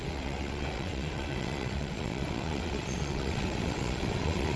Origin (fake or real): fake